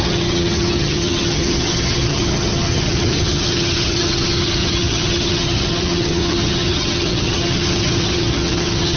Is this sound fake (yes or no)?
yes